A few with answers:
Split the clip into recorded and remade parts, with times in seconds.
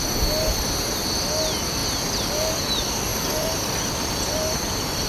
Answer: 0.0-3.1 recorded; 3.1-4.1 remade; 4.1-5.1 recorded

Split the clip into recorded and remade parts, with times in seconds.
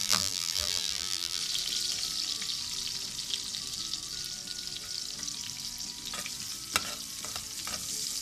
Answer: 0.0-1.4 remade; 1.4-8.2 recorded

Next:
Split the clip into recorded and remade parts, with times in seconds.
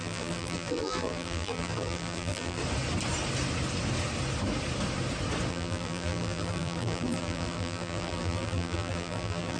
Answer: 0.0-2.6 remade; 2.6-5.5 recorded; 5.5-9.6 remade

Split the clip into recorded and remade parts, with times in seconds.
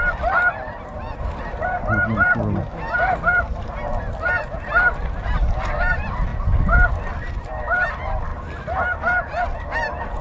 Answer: 0.0-8.3 remade; 8.3-9.4 recorded; 9.4-10.2 remade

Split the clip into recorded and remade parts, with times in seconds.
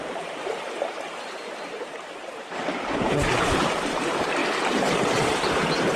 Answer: 0.0-4.4 remade; 4.4-5.2 recorded; 5.2-6.0 remade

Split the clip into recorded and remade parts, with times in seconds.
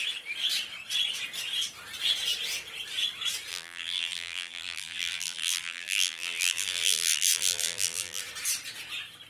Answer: 0.0-3.5 recorded; 3.5-8.2 remade; 8.2-9.3 recorded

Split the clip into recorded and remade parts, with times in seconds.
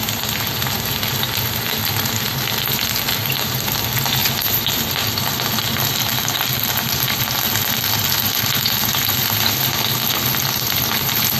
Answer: 0.0-11.4 recorded